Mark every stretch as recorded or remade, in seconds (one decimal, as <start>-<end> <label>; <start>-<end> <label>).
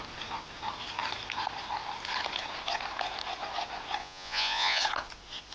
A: 0.0-4.0 recorded; 4.0-4.8 remade; 4.8-5.5 recorded